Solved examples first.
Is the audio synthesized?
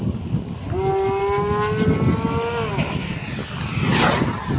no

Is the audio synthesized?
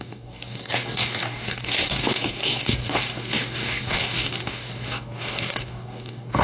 yes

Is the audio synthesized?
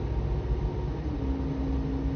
no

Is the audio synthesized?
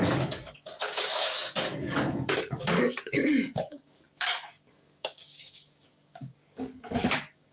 yes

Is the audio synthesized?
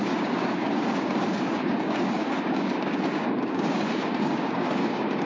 yes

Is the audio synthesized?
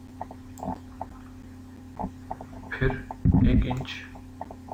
no